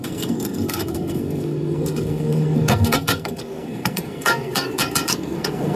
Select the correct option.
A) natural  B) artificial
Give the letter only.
B